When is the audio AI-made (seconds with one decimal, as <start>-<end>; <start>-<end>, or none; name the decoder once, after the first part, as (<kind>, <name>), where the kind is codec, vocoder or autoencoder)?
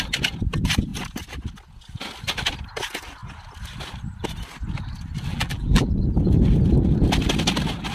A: 5.3-5.9 (vocoder, BigVGAN v2)